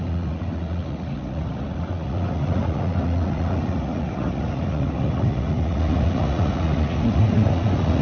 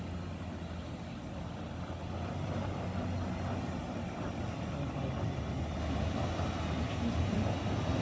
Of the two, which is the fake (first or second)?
first